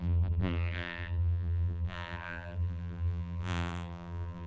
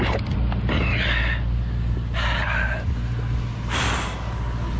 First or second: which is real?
second